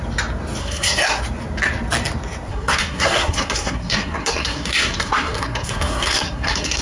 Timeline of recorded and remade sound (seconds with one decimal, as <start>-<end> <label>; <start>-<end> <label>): 0.0-0.6 recorded; 0.6-1.2 remade; 1.2-2.5 recorded; 2.5-6.8 remade